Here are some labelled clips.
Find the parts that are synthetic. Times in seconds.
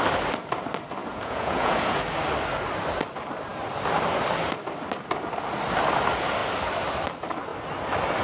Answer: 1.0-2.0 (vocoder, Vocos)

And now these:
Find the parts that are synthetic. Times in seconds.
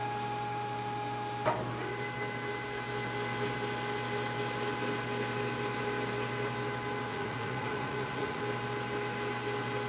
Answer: 7.1-8.4 (vocoder, Vocos)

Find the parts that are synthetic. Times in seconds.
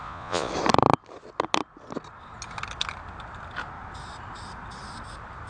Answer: 0.0-0.5 (vocoder, Vocos)